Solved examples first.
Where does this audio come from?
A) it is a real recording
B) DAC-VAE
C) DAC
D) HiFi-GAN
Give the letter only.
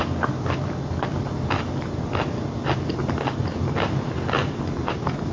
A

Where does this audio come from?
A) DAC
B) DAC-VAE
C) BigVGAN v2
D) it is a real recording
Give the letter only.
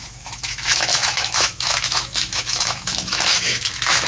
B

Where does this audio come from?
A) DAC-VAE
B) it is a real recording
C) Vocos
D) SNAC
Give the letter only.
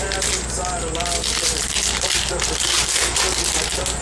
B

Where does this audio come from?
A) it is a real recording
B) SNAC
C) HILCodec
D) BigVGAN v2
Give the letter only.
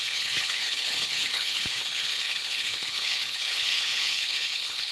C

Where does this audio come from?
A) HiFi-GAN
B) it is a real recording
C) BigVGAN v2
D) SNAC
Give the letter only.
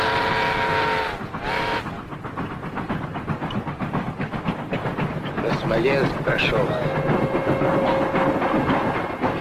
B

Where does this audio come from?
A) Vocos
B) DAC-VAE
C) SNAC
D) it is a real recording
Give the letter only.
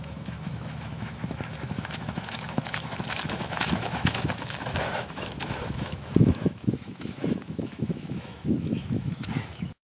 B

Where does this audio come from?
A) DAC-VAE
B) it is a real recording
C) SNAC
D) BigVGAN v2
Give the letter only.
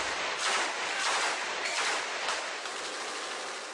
B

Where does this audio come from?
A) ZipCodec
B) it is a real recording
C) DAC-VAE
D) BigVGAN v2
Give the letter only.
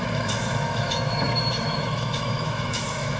C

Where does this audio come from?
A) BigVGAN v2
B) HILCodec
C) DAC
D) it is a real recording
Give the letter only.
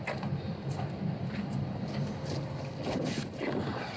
D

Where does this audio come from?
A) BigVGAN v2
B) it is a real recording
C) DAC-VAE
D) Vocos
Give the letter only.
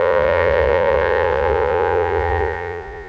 D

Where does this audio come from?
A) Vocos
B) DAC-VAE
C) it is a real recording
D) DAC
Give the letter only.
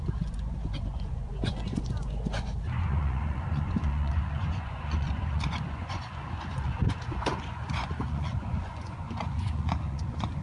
A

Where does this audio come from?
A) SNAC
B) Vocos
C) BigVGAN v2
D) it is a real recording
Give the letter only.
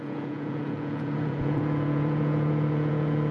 B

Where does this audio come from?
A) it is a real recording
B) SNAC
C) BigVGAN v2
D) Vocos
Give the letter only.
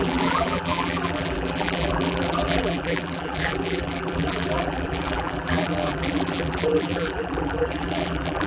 C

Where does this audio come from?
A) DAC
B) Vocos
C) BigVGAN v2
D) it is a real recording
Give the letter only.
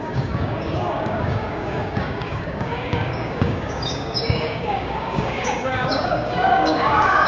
A